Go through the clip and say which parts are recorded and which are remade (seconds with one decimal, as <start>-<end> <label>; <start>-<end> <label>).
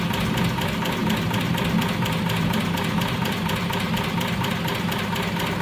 0.0-5.6 recorded